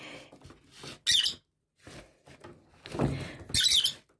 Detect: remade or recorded recorded